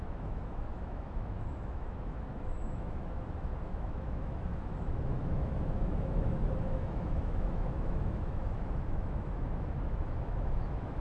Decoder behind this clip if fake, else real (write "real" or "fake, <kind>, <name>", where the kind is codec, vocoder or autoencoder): fake, autoencoder, DAC-VAE